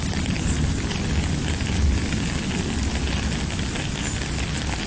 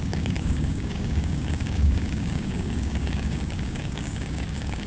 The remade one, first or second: second